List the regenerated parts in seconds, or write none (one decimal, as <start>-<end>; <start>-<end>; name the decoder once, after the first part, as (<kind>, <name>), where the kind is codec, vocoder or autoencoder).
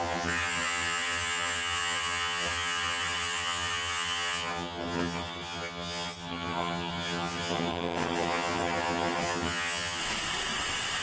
0.0-10.0 (vocoder, HiFi-GAN)